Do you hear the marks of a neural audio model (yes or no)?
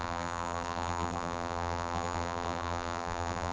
yes